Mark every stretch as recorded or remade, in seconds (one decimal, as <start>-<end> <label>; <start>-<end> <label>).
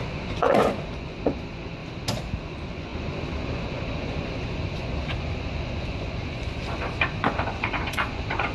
0.0-1.8 remade; 1.8-2.4 recorded; 2.4-8.5 remade